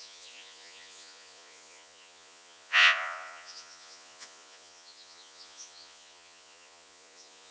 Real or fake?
fake